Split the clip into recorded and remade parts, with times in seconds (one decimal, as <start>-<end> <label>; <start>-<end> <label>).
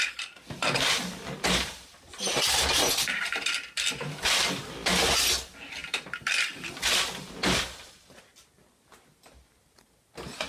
0.0-10.5 recorded